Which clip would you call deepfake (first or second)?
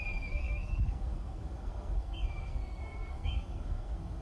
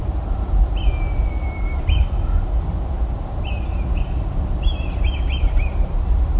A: first